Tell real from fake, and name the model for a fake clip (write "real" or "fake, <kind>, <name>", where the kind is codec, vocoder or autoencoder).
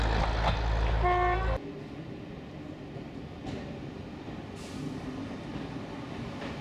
real